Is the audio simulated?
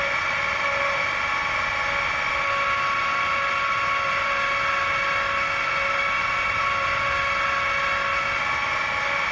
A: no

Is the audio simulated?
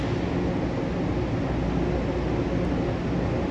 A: no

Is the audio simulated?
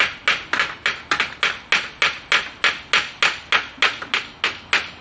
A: no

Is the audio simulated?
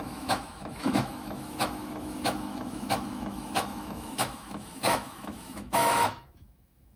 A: yes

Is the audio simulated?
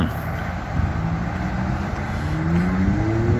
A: no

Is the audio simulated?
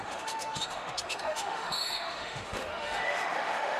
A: yes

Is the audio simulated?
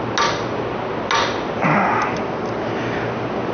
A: no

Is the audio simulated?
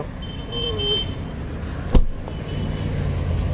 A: no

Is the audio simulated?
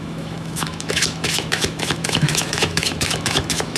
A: yes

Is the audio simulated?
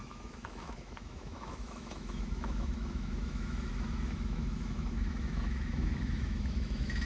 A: yes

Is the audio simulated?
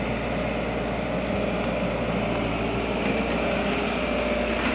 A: no